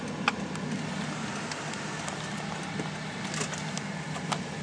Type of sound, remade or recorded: recorded